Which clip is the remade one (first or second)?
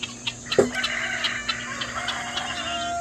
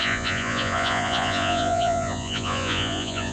second